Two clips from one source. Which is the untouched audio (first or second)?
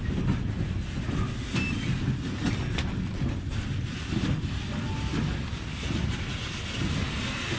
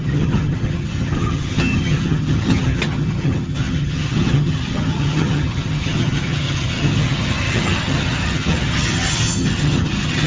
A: first